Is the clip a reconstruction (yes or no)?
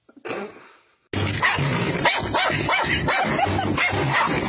no